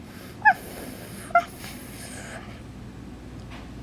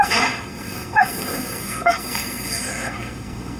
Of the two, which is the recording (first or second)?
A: first